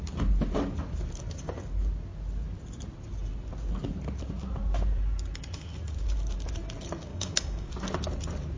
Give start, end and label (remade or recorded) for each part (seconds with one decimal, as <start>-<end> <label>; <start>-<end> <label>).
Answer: 0.0-7.1 recorded; 7.1-7.7 remade; 7.7-8.6 recorded